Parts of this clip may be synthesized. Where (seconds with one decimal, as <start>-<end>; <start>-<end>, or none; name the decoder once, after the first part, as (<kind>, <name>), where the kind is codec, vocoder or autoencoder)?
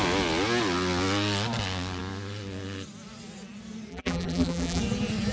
3.9-4.8 (vocoder, BigVGAN v2)